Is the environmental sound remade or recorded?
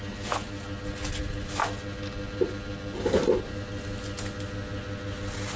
recorded